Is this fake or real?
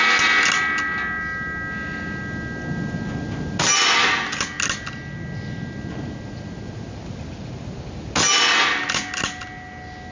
real